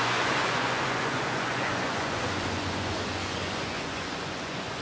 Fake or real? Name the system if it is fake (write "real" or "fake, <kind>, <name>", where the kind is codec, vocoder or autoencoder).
fake, vocoder, Vocos